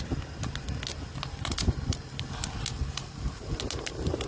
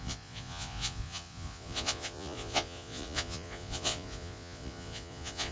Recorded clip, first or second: first